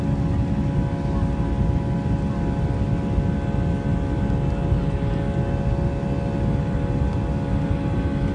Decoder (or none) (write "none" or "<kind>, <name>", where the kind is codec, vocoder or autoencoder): none